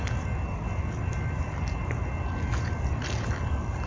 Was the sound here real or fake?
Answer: real